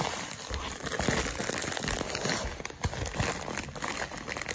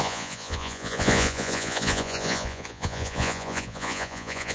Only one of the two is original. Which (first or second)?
first